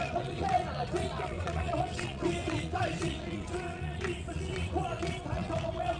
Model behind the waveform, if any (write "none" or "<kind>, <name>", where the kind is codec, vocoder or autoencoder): vocoder, WaveNeXt